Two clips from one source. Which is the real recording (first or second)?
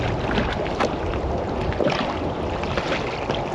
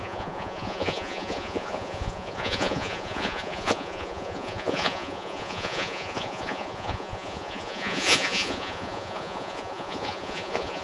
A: first